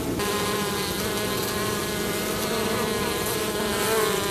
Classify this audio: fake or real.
real